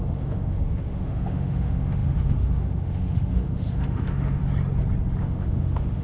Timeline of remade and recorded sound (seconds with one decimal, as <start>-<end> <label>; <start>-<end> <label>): 0.0-4.4 remade; 4.4-5.2 recorded; 5.2-6.0 remade